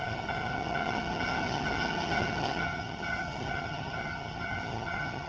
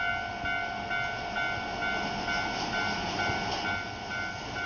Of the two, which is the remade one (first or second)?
first